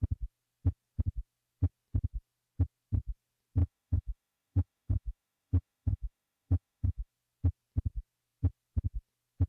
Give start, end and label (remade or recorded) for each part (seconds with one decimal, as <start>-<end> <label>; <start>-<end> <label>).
0.0-3.6 recorded; 3.6-7.1 remade; 7.1-9.5 recorded